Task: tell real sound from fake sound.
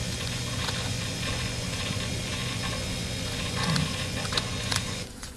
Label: fake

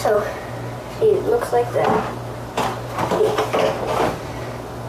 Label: real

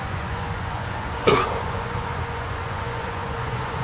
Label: fake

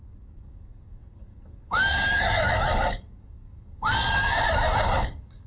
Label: fake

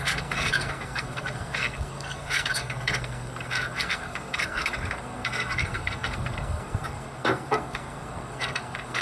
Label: fake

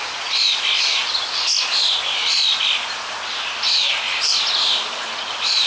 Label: real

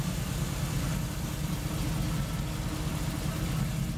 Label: real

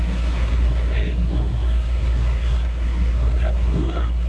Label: fake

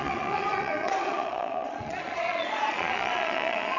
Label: fake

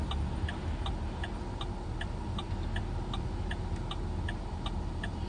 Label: real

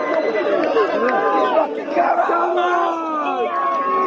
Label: real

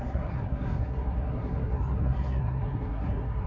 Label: fake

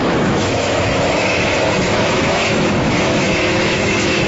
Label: fake